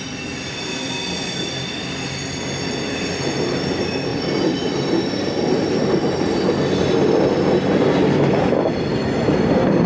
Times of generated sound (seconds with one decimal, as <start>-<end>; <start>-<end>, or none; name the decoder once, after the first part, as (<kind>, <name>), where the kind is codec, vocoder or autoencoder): 4.1-5.7 (vocoder, BigVGAN v2)